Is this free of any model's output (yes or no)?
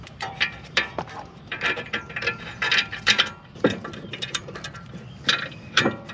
no